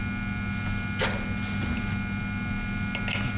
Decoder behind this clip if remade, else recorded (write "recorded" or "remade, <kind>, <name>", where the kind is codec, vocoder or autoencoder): recorded